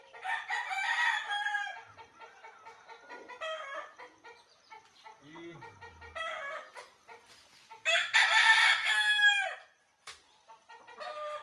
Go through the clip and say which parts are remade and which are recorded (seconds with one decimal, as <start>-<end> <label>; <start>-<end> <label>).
0.0-11.4 recorded